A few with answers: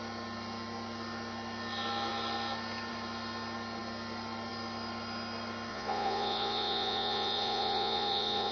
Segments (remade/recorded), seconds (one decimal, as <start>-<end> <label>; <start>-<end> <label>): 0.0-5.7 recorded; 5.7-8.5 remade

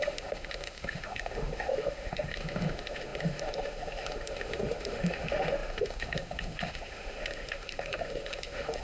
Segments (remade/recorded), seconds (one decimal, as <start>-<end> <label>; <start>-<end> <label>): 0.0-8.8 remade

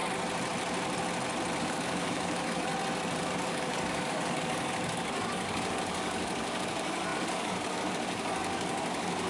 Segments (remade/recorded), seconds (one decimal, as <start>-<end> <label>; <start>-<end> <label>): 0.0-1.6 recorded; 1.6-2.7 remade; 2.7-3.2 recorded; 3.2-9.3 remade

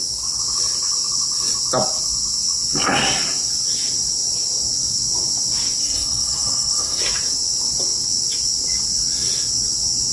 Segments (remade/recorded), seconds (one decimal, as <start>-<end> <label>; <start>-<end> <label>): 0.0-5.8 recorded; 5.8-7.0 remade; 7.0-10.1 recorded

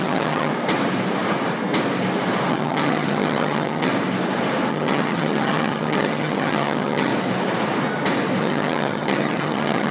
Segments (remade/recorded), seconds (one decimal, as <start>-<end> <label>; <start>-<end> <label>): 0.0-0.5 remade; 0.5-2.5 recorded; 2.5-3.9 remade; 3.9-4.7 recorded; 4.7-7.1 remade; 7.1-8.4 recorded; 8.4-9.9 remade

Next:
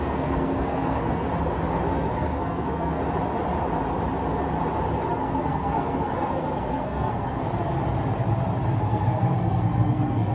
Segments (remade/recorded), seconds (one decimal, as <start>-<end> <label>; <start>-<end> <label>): 0.0-1.3 remade; 1.3-1.8 recorded; 1.8-3.0 remade; 3.0-5.1 recorded; 5.1-7.4 remade; 7.4-8.8 recorded; 8.8-10.3 remade

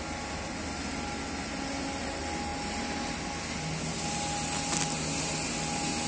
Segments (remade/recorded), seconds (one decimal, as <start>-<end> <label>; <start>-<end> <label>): 0.0-6.1 recorded

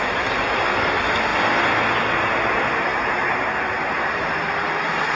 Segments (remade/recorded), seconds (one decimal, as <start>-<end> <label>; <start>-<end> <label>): 0.0-1.3 remade; 1.3-2.5 recorded; 2.5-2.9 remade; 2.9-3.6 recorded; 3.6-5.2 remade